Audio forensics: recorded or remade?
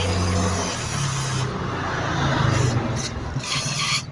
recorded